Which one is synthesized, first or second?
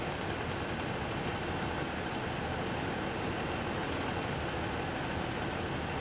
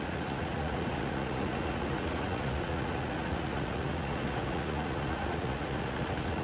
second